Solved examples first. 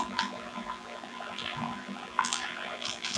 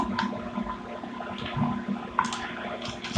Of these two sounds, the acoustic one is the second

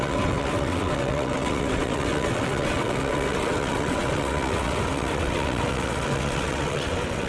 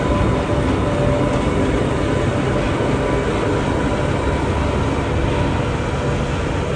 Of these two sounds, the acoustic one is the second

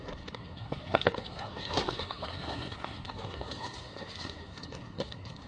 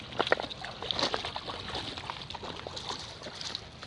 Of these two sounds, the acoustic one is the second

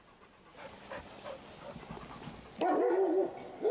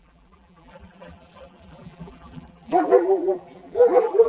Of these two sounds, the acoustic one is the first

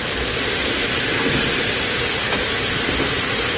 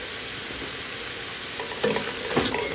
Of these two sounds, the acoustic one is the second